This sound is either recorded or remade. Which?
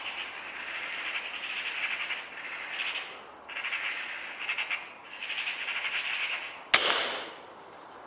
recorded